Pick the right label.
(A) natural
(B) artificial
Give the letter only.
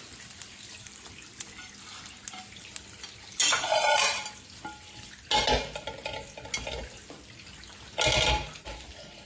A